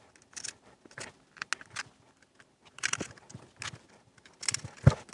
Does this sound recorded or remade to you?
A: recorded